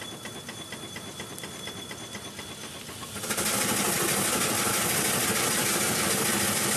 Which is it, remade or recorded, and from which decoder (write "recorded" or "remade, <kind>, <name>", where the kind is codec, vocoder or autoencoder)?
recorded